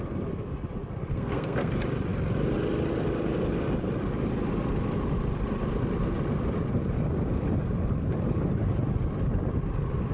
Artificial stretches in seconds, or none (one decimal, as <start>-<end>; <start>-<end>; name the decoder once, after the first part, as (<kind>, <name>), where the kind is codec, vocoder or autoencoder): 1.1-1.7 (codec, SNAC)